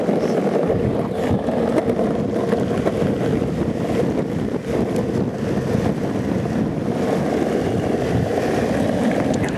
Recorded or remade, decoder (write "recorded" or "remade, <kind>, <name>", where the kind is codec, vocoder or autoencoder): recorded